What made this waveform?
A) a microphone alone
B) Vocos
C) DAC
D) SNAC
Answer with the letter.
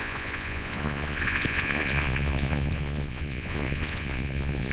B